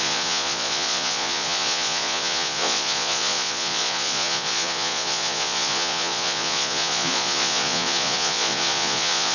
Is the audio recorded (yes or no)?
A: no